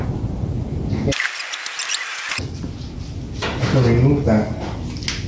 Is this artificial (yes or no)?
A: no